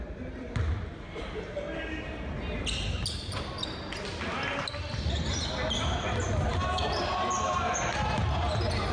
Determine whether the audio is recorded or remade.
recorded